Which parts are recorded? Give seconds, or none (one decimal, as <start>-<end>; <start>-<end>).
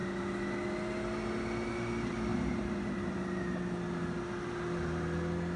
0.0-5.6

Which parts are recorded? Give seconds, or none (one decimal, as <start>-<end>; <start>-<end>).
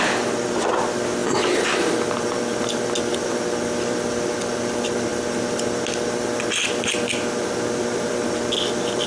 0.0-9.1